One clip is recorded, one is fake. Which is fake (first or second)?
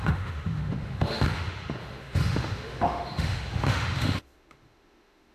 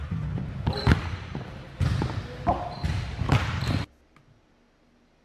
first